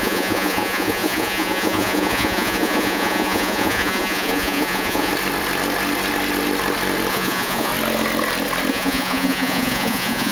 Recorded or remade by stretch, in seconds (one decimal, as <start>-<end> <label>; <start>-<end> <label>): 0.0-5.1 remade; 5.1-7.1 recorded; 7.1-7.7 remade; 7.7-8.7 recorded; 8.7-10.3 remade